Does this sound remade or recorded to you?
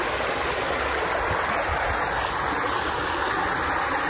recorded